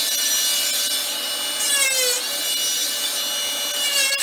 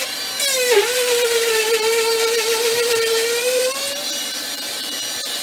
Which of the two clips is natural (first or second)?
first